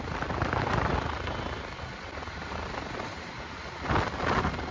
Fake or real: real